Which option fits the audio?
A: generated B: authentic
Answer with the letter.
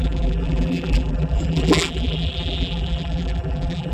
A